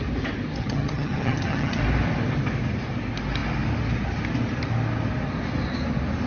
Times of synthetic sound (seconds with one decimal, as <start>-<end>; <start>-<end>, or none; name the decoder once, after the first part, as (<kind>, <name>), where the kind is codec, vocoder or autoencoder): 0.6-1.8 (vocoder, HiFi-GAN)